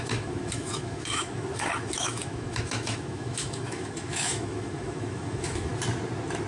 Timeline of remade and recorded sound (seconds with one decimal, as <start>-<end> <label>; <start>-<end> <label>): 0.0-5.7 remade; 5.7-6.5 recorded